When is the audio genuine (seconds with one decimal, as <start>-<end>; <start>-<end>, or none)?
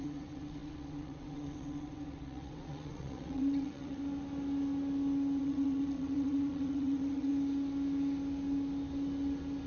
4.0-5.4; 7.3-9.7